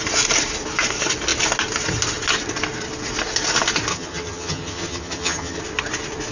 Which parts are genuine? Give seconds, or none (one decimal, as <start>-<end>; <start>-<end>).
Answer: 0.0-3.9; 5.6-6.3